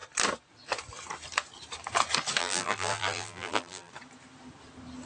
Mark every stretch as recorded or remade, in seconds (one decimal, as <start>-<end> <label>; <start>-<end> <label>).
0.0-2.4 recorded; 2.4-3.9 remade; 3.9-5.1 recorded